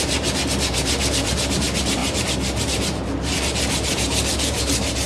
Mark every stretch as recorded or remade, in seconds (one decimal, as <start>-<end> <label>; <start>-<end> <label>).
0.0-5.1 remade